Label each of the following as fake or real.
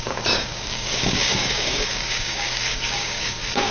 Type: fake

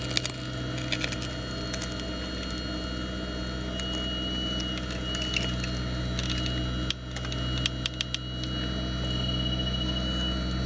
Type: real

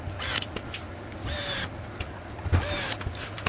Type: real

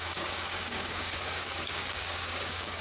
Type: fake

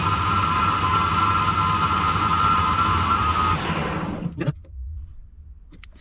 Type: real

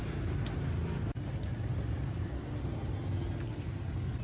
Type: real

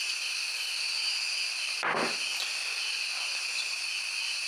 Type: real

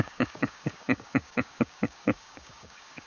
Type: fake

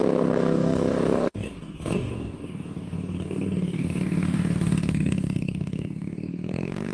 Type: fake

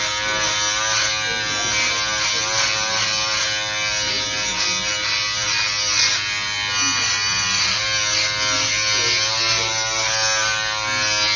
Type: real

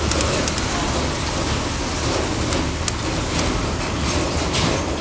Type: real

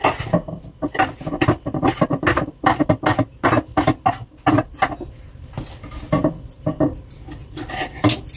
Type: real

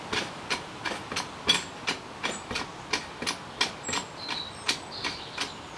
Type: real